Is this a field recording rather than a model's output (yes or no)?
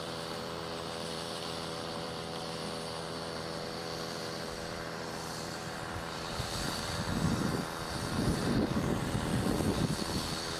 no